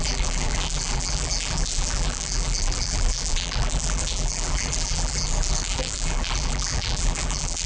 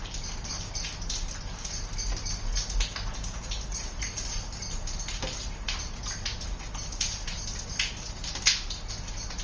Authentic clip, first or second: second